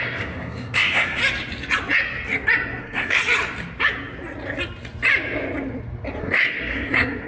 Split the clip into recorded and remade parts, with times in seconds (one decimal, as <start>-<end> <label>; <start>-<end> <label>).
0.0-1.2 remade; 1.2-2.8 recorded; 2.8-3.2 remade; 3.2-6.2 recorded; 6.2-7.3 remade